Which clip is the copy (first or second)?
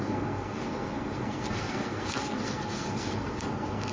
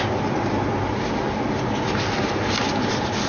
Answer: first